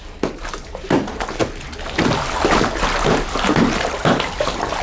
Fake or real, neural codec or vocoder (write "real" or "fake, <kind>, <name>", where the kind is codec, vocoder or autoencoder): real